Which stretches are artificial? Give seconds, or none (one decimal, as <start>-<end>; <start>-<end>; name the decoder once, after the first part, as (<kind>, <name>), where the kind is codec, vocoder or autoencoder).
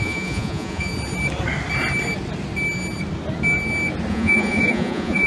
0.0-0.9 (vocoder, Vocos); 4.1-5.3